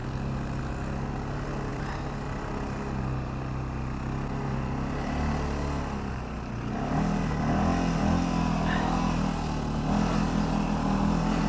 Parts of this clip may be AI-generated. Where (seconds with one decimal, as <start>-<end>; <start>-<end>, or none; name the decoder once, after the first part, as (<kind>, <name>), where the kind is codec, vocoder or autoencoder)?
1.7-2.4 (vocoder, BigVGAN v2)